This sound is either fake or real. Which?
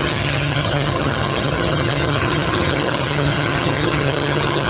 fake